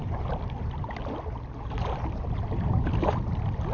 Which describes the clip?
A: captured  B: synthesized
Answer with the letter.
A